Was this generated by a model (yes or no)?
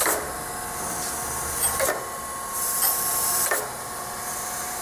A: no